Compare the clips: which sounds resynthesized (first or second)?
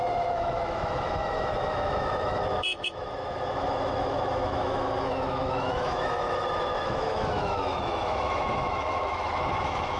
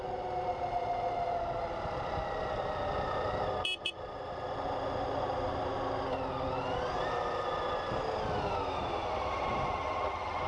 first